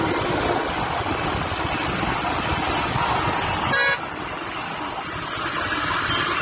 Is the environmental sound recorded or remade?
recorded